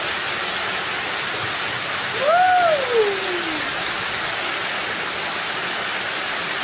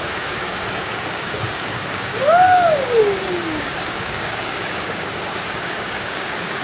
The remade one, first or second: second